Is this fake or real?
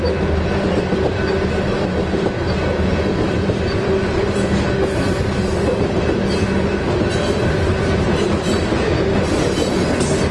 real